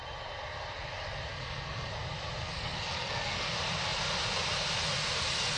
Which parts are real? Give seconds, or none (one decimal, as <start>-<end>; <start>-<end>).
0.0-1.3; 1.9-2.4; 3.5-5.6